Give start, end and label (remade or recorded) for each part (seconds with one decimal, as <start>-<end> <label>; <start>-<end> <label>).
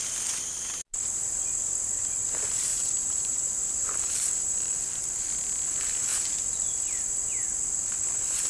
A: 0.0-2.7 recorded; 2.7-5.0 remade; 5.0-8.5 recorded